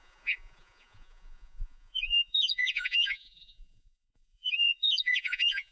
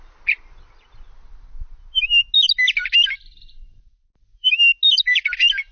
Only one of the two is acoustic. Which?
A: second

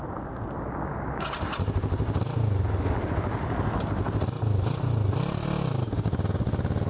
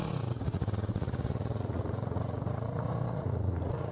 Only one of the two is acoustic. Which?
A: first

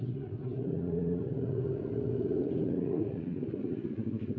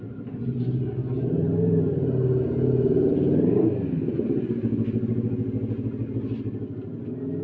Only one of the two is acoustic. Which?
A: second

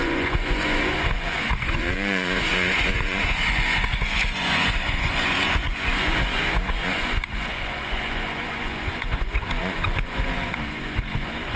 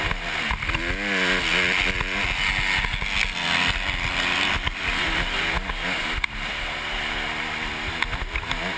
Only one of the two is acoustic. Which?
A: second